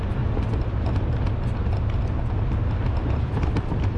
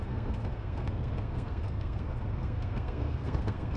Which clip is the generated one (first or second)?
second